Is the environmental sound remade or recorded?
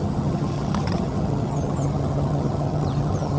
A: remade